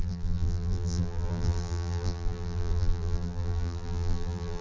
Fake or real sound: fake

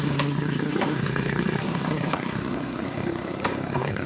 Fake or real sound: fake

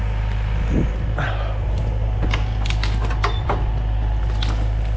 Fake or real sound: real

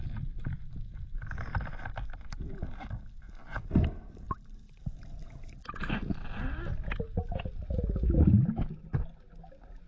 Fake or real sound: real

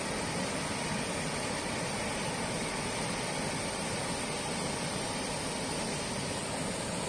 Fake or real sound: real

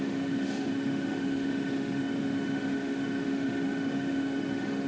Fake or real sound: fake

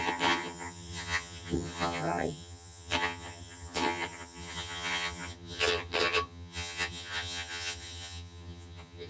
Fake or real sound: fake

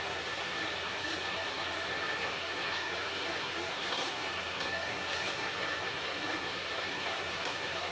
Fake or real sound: fake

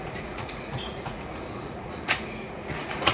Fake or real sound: fake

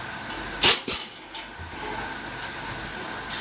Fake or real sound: real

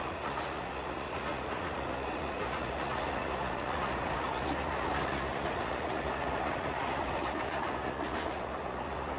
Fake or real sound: fake